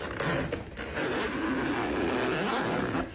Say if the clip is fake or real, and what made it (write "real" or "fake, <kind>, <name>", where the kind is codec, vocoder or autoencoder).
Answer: real